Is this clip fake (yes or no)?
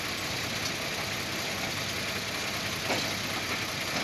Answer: no